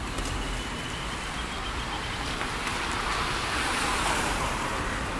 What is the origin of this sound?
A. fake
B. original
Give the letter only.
B